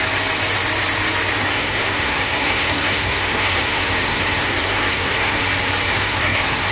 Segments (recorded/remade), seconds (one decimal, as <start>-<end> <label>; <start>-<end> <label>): 0.0-1.4 recorded; 1.4-5.4 remade; 5.4-5.9 recorded; 5.9-6.7 remade